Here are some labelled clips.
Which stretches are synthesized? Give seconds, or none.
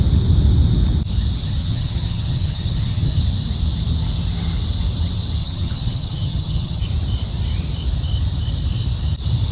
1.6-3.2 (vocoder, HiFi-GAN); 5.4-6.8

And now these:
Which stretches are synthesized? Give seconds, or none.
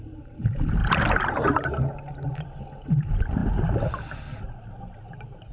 none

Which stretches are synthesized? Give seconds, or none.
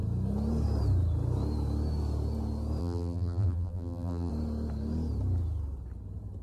2.8-4.3 (vocoder, BigVGAN v2)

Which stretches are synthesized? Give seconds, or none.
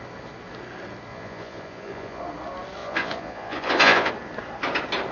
1.1-2.2 (vocoder, Vocos); 2.8-4.1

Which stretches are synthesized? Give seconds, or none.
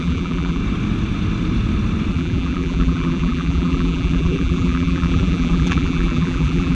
0.0-0.6 (vocoder, BigVGAN v2); 2.1-6.7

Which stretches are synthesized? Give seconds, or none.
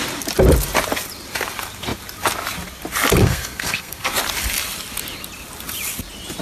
3.2-4.1 (codec, SNAC)